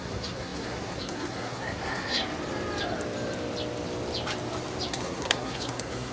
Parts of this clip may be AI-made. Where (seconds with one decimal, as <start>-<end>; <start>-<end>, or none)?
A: 0.0-2.2; 4.9-6.1